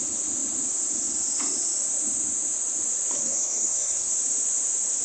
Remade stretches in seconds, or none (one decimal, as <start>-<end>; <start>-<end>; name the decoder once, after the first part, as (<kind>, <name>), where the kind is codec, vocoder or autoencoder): 3.2-4.1 (codec, SNAC)